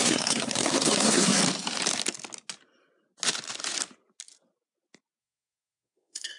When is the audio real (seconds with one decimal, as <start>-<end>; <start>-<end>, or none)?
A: 1.4-5.2